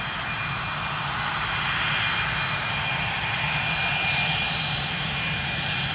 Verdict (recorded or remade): recorded